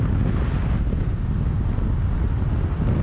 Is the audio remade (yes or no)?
no